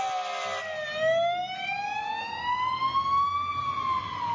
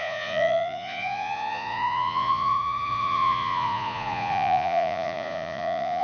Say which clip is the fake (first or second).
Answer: second